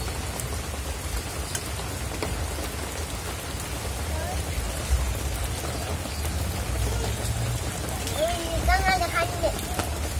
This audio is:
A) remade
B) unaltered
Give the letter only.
B